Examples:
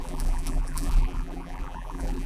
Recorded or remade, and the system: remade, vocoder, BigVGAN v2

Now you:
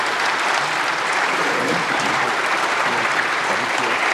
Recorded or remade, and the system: remade, vocoder, BigVGAN v2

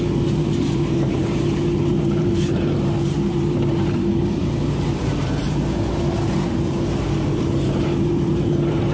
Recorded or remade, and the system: remade, vocoder, BigVGAN v2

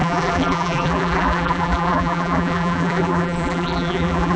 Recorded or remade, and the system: remade, vocoder, BigVGAN v2